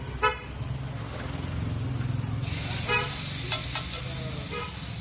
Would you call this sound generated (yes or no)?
no